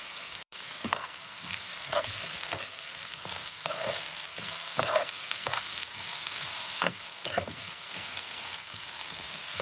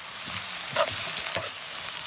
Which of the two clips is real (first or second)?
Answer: second